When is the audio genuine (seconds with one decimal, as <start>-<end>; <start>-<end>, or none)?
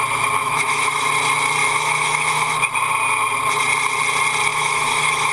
0.0-0.4; 1.1-1.6; 2.6-4.5